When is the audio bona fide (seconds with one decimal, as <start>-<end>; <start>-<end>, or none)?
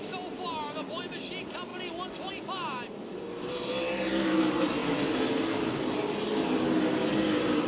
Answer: 0.0-7.7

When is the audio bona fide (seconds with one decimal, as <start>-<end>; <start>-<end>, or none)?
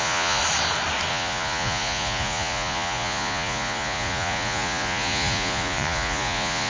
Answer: 0.4-1.1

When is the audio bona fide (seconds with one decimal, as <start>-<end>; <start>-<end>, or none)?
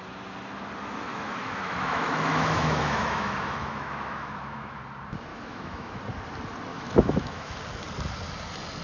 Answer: 0.0-1.1; 4.8-5.3; 6.0-6.7; 7.6-8.8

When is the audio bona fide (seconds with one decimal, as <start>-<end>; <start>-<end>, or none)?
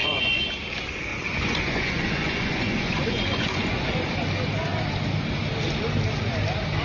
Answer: 0.5-1.1; 4.1-6.8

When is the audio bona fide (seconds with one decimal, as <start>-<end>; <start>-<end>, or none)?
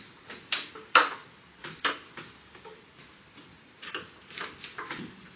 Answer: 0.0-1.2; 1.9-3.5; 4.1-5.4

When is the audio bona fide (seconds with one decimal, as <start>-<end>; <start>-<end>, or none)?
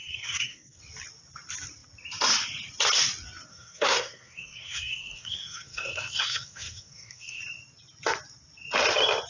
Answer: 0.8-3.5; 7.4-9.3